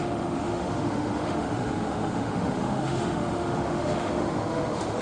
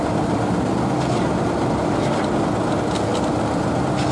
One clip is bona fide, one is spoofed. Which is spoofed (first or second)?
first